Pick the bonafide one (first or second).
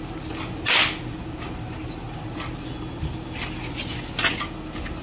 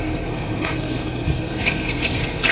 first